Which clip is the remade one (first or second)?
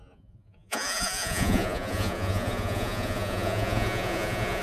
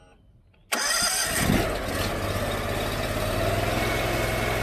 first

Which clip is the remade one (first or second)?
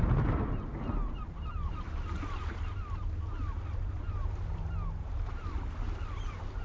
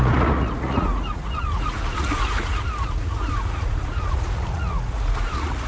second